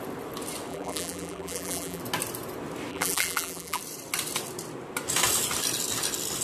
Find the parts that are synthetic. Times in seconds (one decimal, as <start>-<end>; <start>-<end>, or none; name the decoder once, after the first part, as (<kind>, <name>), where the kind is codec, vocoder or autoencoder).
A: 0.7-2.0 (vocoder, BigVGAN v2); 2.9-3.8